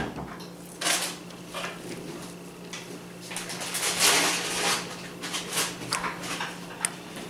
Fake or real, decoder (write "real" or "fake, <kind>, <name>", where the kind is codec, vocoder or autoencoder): real